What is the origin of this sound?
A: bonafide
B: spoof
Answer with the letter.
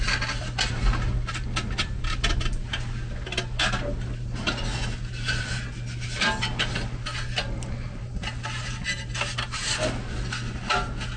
A